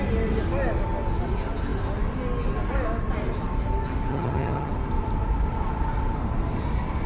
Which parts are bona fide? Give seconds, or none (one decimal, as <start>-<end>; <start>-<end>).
0.0-4.1; 4.7-7.1